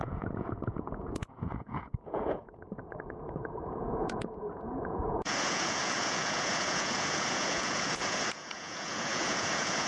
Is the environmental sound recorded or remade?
remade